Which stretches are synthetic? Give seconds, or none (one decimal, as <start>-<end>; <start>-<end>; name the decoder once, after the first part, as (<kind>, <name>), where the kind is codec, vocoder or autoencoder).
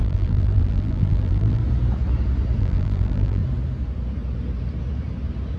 0.0-1.6 (vocoder, BigVGAN v2); 2.6-3.4